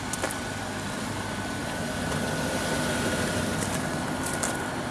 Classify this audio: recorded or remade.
recorded